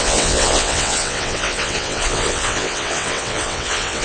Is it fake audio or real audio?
fake